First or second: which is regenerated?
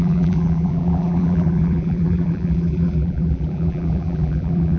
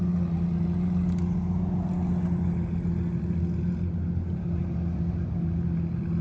first